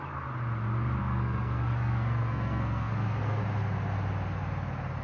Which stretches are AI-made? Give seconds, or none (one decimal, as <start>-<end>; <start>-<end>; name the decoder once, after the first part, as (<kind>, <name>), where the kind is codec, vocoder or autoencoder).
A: 1.0-3.4 (codec, SNAC)